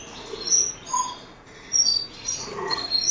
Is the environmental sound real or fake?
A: fake